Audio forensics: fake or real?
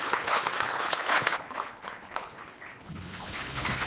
fake